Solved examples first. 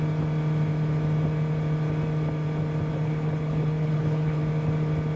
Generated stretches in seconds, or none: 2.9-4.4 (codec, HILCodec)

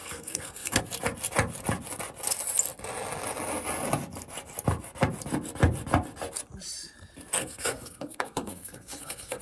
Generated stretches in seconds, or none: 0.0-0.8 (codec, SNAC); 7.4-9.4

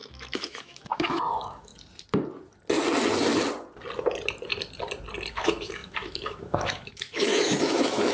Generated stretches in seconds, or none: 0.0-1.7 (autoencoder, DAC-VAE); 5.3-8.1

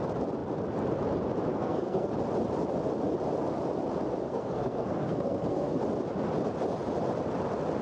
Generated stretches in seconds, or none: 1.5-2.1 (codec, SNAC); 4.2-5.8

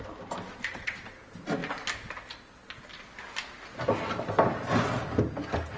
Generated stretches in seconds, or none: 0.7-1.2 (vocoder, WaveNeXt)

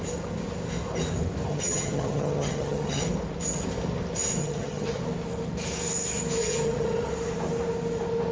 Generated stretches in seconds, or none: 1.5-3.0 (vocoder, HiFi-GAN); 4.4-5.0; 6.4-7.1

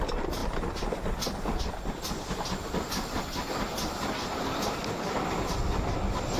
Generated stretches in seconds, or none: none